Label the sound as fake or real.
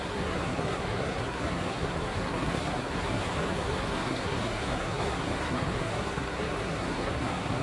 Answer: fake